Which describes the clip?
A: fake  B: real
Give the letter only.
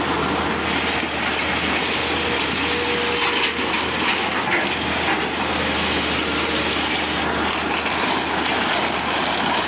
B